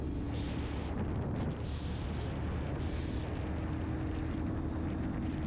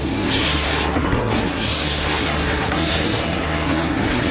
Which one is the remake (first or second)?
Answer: second